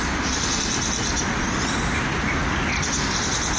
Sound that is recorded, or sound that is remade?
recorded